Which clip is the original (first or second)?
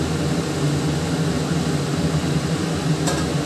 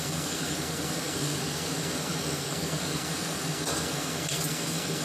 first